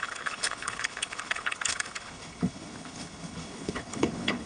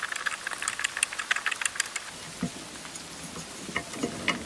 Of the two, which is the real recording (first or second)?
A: second